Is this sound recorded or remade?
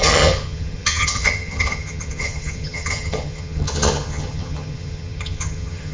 remade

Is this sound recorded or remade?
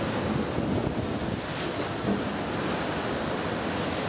recorded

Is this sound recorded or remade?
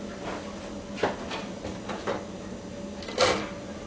recorded